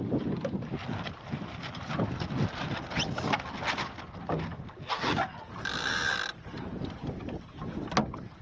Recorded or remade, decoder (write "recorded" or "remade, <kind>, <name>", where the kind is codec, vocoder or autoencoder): recorded